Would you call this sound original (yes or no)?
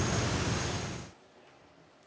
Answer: yes